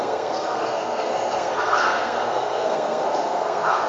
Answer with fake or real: fake